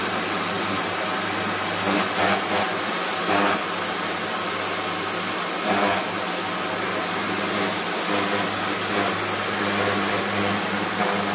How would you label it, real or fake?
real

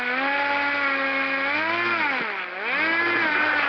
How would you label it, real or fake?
real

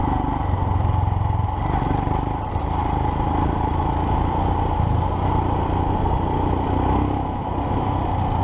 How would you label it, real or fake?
real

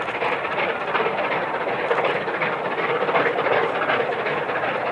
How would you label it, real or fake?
real